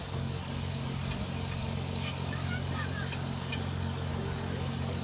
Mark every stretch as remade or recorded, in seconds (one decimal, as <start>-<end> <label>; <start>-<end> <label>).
0.0-5.0 remade

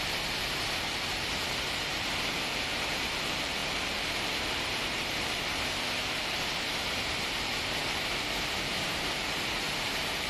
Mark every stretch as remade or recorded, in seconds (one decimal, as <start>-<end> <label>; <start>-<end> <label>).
0.0-10.3 remade

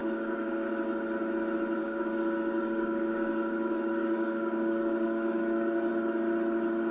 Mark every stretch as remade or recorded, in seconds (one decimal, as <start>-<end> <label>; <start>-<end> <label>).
0.0-0.7 remade; 0.7-1.8 recorded; 1.8-5.9 remade; 5.9-6.9 recorded